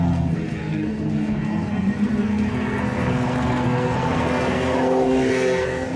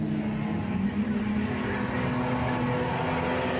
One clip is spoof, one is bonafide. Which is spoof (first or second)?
first